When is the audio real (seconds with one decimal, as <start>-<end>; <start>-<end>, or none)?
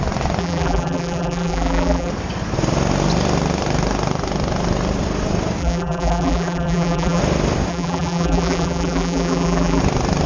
0.0-0.4; 2.1-5.6; 7.2-7.7; 9.8-10.3